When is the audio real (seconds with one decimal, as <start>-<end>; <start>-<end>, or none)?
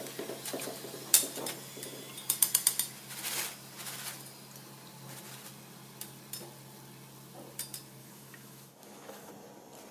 0.0-8.0; 9.3-9.9